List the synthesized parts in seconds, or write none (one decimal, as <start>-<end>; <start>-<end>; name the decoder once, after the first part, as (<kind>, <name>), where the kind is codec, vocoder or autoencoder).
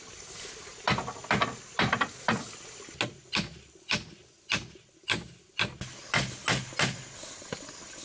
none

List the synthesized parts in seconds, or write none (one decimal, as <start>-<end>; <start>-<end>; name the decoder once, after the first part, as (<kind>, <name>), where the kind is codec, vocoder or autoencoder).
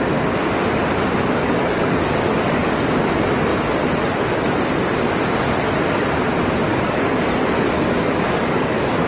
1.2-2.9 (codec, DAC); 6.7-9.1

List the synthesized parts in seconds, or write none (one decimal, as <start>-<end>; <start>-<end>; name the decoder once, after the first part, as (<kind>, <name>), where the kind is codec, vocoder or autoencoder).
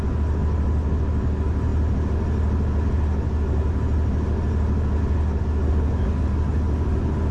none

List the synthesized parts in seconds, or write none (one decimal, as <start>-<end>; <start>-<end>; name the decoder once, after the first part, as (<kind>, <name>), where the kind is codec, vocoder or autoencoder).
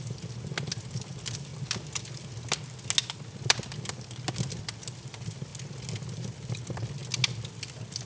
0.0-1.5 (vocoder, BigVGAN v2); 4.5-5.5; 6.1-7.0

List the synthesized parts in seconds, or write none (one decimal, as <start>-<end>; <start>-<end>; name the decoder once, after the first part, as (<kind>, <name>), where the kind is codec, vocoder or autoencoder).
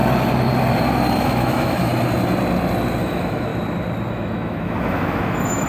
1.2-1.9 (autoencoder, DAC-VAE); 3.0-3.5; 4.1-5.7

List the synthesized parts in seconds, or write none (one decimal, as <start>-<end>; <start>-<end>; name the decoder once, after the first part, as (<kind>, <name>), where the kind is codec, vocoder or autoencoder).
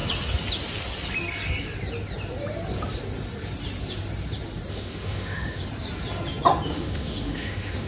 4.7-5.6 (autoencoder, DAC-VAE); 6.7-7.9